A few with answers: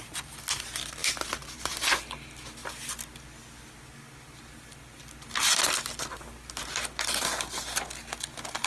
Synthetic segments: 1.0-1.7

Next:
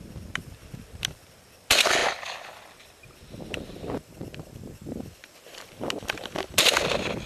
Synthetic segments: none

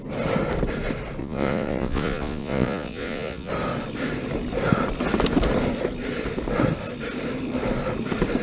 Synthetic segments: 1.2-3.5

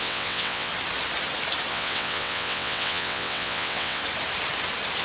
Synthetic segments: 0.0-0.7; 1.7-4.0

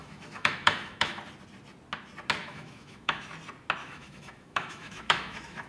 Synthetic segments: 0.0-1.2; 2.4-3.3; 3.8-5.7

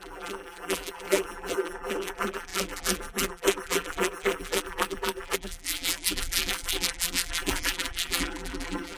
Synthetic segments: 0.0-9.0

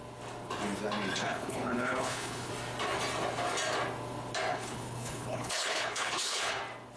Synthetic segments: 1.2-2.5; 4.5-6.6

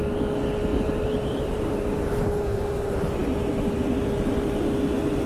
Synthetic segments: 0.7-1.7